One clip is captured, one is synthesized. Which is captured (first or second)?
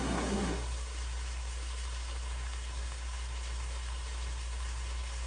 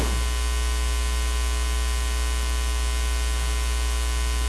second